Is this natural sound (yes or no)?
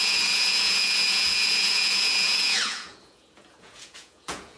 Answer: no